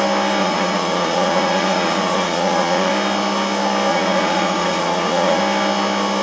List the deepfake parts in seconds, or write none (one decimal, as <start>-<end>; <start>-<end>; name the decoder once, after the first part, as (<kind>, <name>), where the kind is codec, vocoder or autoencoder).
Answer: 0.4-2.9 (vocoder, Vocos); 3.9-5.4